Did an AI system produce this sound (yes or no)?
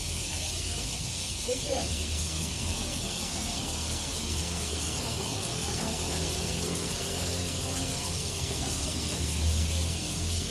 yes